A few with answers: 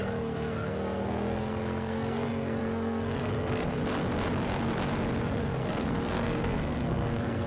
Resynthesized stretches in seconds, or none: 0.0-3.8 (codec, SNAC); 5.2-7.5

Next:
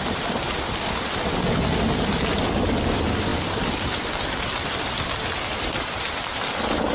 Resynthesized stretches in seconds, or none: none

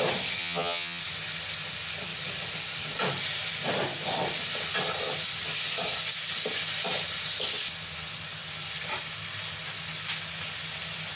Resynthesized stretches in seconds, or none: 0.4-1.0 (vocoder, HiFi-GAN)